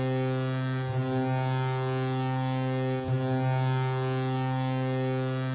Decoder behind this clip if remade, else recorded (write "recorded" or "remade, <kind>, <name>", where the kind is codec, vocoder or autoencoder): recorded